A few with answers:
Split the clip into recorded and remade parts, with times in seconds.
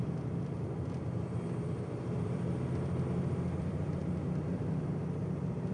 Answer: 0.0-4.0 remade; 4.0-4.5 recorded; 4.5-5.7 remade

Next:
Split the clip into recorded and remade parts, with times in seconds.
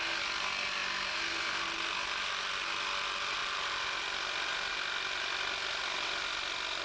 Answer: 0.0-6.8 recorded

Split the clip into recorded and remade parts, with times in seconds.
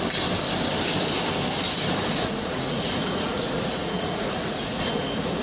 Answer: 0.0-2.1 recorded; 2.1-5.4 remade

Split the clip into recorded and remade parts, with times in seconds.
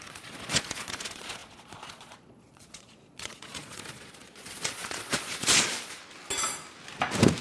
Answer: 0.0-6.0 remade; 6.0-7.4 recorded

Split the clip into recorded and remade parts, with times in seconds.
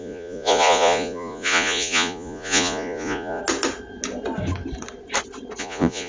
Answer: 0.0-3.4 remade; 3.4-5.6 recorded; 5.6-6.1 remade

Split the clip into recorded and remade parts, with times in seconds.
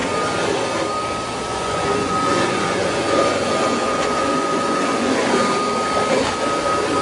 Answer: 0.0-1.5 recorded; 1.5-5.4 remade; 5.4-7.0 recorded